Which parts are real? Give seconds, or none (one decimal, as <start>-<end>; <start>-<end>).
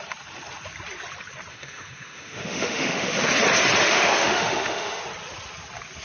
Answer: 0.0-1.5; 3.3-3.8; 5.0-6.0